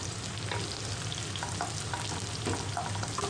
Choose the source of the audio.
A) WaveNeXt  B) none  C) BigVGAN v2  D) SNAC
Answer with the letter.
B